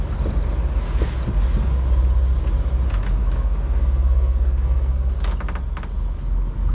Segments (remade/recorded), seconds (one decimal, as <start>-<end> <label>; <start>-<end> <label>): 0.0-3.2 recorded; 3.2-5.1 remade; 5.1-6.7 recorded